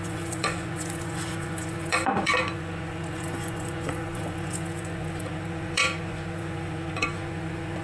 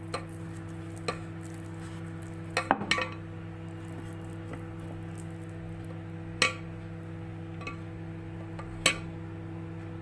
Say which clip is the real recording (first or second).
second